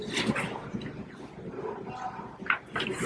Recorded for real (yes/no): yes